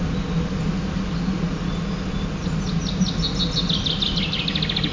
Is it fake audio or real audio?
real